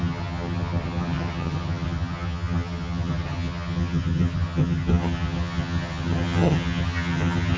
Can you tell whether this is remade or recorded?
remade